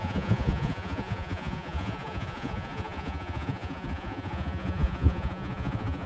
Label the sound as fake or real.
fake